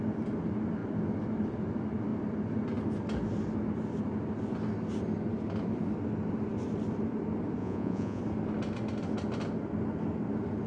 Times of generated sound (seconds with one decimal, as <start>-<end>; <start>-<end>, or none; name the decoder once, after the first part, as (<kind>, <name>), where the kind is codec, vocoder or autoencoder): 7.6-8.2 (vocoder, Vocos)